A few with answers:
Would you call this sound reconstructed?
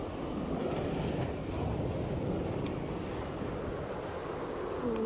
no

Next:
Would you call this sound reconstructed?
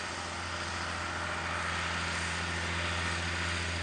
no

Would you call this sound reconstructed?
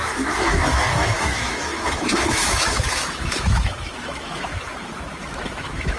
yes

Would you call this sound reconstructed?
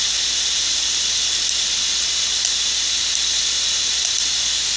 no